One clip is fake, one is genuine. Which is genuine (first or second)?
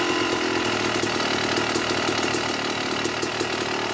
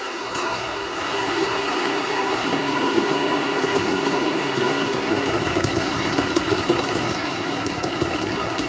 first